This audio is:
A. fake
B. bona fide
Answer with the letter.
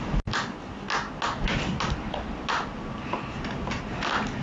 B